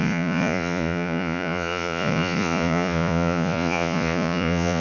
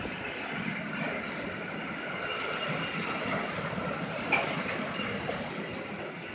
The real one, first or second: second